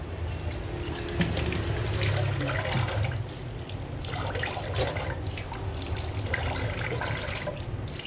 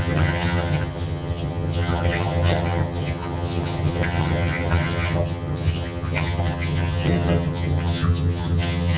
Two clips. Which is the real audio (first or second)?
first